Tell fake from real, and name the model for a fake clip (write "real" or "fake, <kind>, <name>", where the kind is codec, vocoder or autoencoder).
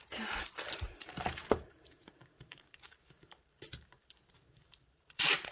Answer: fake, vocoder, BigVGAN v2